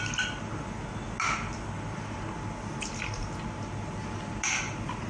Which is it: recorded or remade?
recorded